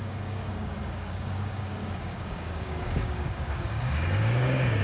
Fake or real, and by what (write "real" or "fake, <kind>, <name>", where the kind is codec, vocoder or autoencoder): fake, codec, DAC